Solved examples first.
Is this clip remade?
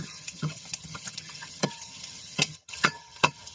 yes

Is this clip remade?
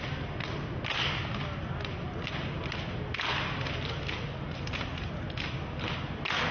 no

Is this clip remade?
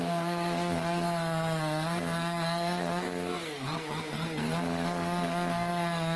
yes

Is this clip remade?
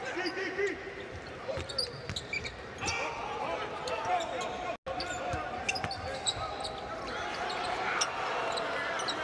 no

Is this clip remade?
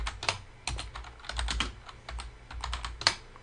no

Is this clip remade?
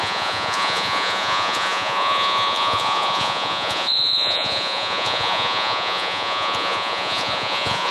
yes